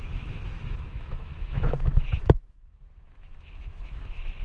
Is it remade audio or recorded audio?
remade